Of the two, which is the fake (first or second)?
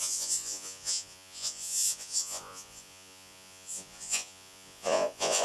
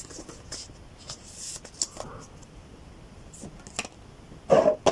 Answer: first